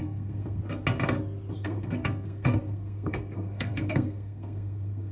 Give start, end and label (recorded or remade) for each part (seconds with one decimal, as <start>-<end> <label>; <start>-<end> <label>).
0.0-0.6 remade; 0.6-1.5 recorded; 1.5-5.1 remade